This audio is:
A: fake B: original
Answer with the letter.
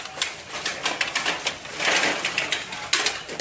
B